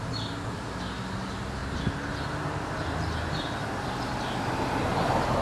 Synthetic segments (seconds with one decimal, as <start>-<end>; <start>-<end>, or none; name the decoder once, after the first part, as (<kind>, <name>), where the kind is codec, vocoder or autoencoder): none